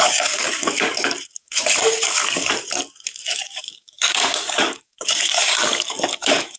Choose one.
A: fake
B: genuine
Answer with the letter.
A